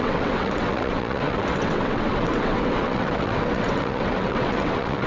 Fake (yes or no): yes